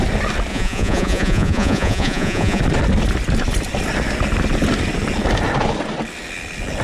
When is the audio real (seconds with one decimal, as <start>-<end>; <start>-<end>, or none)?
0.0-0.5; 2.6-6.8